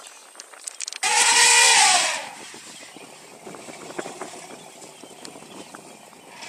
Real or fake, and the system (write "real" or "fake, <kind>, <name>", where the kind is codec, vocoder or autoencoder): real